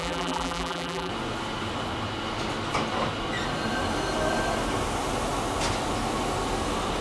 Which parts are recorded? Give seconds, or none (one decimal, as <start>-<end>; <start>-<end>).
1.1-7.0